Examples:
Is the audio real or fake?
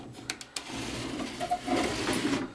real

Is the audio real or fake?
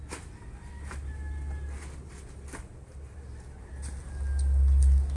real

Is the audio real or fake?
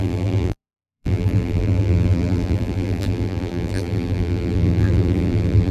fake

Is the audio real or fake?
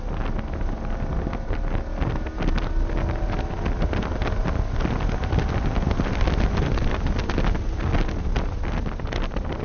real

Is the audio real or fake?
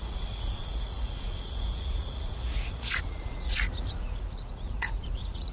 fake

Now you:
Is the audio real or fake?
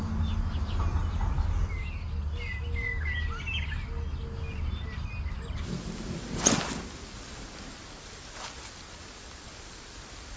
real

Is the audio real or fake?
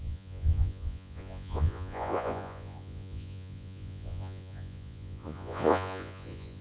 fake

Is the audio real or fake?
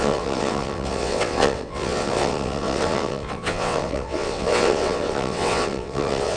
fake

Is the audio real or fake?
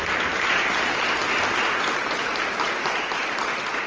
real